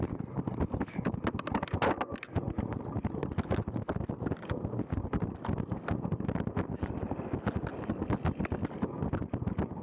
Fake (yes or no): no